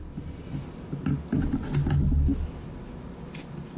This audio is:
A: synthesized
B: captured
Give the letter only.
B